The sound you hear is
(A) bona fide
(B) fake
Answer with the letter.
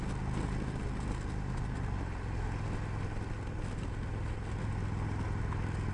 A